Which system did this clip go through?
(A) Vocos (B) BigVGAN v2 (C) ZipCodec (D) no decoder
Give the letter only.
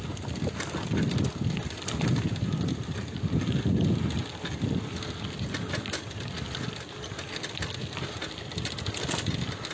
D